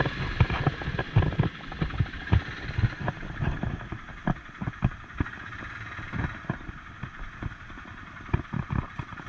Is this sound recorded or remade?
recorded